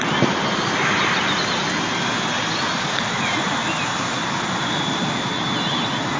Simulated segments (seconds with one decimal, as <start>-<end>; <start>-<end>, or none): none